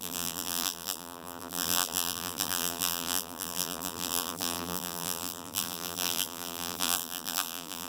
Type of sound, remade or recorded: remade